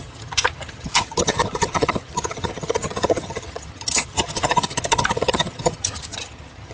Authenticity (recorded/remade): remade